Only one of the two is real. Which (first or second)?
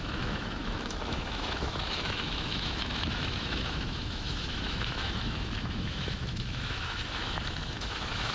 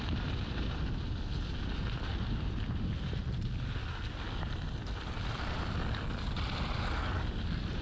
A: second